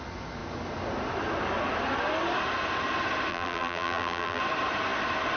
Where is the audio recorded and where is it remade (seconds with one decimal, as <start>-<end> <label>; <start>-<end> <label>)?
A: 0.0-3.3 recorded; 3.3-4.4 remade; 4.4-5.4 recorded